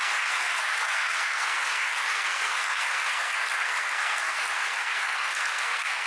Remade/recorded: remade